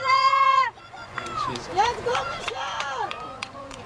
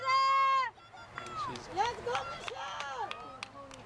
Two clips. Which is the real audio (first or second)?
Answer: second